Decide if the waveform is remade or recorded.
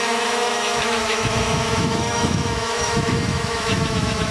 remade